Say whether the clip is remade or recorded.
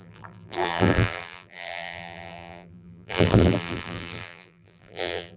remade